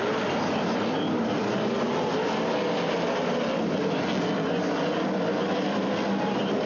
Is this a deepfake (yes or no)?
no